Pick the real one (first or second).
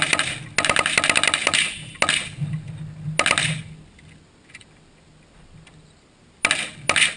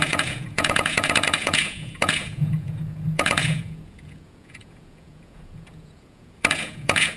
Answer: first